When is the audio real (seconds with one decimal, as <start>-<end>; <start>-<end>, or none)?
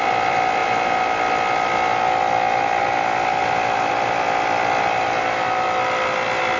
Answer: 0.0-6.6